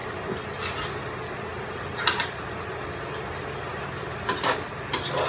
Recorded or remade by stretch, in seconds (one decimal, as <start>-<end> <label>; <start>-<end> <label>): 0.0-1.5 recorded; 1.5-2.7 remade; 2.7-5.3 recorded